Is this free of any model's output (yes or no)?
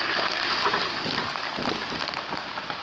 yes